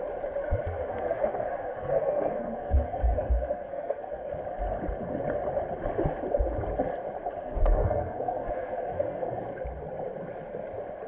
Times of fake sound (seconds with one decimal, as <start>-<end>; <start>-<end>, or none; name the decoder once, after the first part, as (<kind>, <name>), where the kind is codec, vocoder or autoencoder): 0.4-4.3 (codec, SNAC); 7.4-9.4